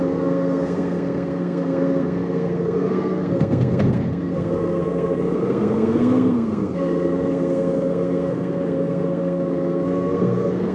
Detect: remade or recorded remade